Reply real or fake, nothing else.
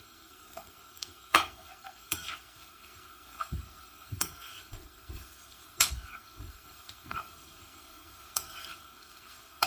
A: fake